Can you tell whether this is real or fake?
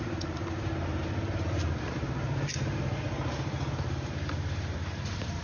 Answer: fake